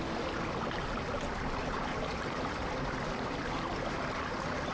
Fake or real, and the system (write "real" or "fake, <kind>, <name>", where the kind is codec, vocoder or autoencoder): real